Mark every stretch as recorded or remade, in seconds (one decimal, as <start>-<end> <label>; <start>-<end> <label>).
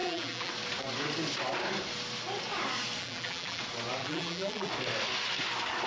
0.0-0.5 remade; 0.5-3.0 recorded; 3.0-3.6 remade; 3.6-4.0 recorded; 4.0-4.7 remade; 4.7-5.9 recorded